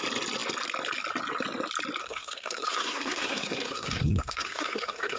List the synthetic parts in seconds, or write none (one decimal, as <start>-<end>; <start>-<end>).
2.0-5.2